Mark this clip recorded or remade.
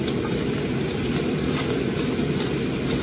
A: recorded